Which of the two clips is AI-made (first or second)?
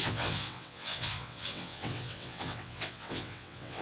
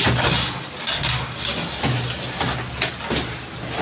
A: first